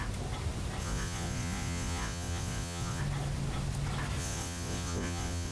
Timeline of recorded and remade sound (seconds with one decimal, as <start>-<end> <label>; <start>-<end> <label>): 0.0-0.8 recorded; 0.8-3.0 remade; 3.0-4.2 recorded; 4.2-5.5 remade